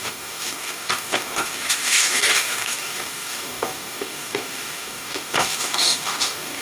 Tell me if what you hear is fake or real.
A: fake